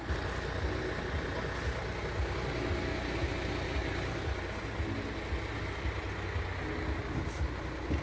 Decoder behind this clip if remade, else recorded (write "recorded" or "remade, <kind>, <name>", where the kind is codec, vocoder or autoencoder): recorded